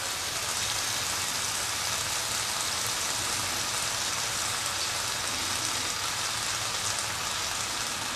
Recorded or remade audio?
recorded